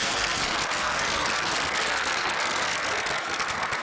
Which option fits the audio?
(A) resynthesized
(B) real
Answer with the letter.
A